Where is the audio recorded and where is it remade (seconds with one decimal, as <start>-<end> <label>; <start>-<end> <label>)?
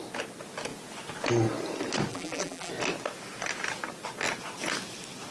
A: 0.0-2.1 recorded; 2.1-2.7 remade; 2.7-5.3 recorded